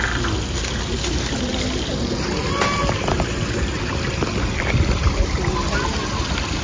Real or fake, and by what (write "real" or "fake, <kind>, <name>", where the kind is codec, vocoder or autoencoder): real